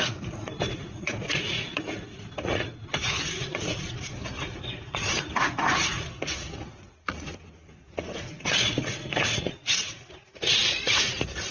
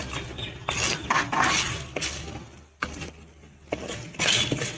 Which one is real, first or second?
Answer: second